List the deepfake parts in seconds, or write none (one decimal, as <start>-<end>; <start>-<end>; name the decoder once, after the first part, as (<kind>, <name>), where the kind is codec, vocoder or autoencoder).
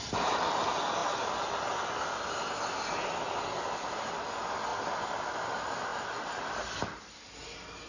1.0-1.8 (vocoder, BigVGAN v2)